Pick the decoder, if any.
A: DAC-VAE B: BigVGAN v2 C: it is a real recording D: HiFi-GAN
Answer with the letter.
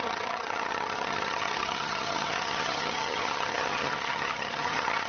D